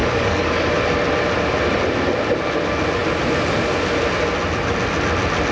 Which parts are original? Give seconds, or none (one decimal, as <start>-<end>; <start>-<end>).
0.7-5.5